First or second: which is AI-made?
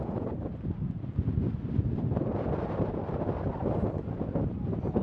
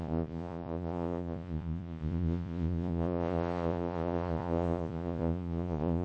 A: second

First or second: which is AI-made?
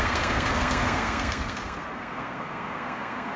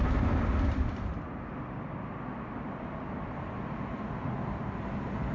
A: first